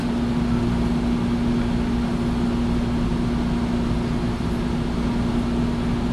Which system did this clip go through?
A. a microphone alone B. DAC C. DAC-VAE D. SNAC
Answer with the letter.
A